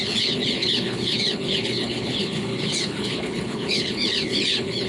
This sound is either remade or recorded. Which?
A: remade